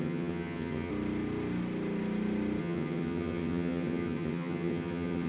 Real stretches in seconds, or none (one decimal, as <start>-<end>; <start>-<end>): 0.9-2.6